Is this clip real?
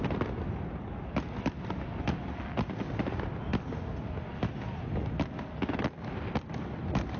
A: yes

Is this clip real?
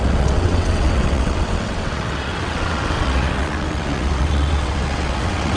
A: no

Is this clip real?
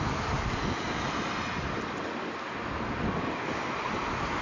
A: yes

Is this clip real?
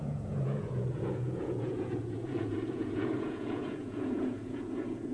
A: no